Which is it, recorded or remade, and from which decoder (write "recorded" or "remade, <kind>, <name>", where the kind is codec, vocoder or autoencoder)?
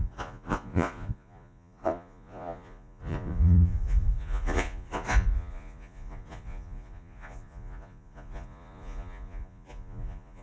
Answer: remade, vocoder, Vocos